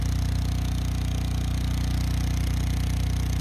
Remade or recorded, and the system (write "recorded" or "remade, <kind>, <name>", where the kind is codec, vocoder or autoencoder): recorded